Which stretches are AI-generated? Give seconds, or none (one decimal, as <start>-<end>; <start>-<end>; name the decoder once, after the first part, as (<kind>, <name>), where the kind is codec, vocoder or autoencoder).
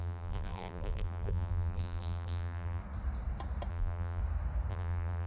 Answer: 0.0-2.8 (vocoder, BigVGAN v2); 3.7-4.2; 4.7-5.3